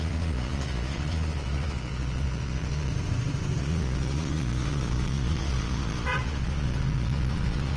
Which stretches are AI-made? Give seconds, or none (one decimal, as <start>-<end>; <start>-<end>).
0.0-2.9; 3.6-7.8